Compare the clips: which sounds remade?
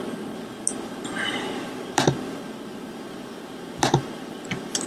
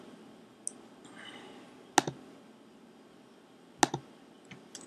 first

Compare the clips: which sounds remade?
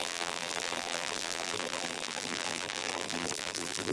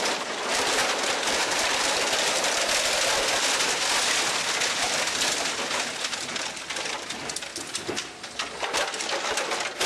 first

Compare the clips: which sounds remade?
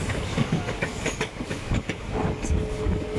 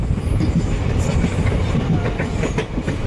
first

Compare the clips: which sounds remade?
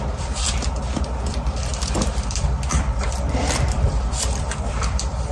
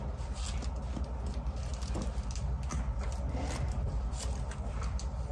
first